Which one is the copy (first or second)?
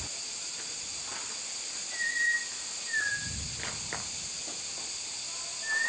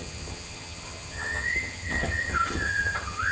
second